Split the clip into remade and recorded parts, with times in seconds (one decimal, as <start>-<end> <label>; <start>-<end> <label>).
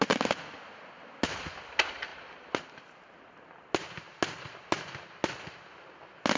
0.0-6.4 recorded